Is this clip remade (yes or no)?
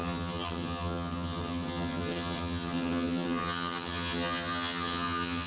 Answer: yes